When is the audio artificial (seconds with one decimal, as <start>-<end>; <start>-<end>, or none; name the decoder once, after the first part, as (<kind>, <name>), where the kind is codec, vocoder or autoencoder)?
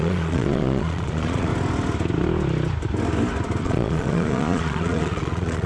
0.0-1.5 (vocoder, Vocos); 3.6-5.7